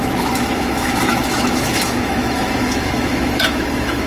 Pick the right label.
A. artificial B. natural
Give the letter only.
A